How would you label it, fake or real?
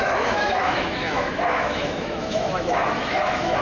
fake